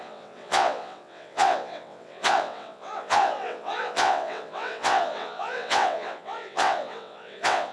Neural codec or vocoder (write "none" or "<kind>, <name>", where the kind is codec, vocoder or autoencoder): vocoder, WaveNeXt